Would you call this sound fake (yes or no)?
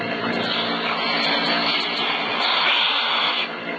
no